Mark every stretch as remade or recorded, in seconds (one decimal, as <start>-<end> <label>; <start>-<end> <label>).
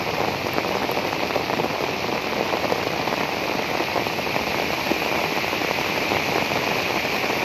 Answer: 0.0-7.4 recorded